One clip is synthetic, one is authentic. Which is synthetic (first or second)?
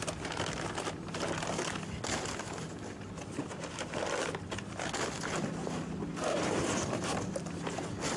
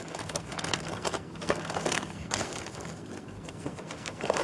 second